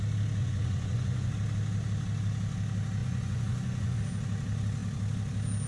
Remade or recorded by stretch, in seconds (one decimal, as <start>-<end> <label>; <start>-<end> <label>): 0.0-0.4 recorded; 0.4-1.3 remade; 1.3-3.0 recorded; 3.0-4.0 remade; 4.0-5.7 recorded